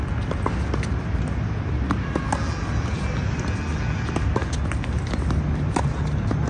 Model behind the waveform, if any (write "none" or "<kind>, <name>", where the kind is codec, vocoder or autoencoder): none